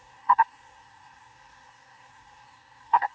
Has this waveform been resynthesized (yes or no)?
yes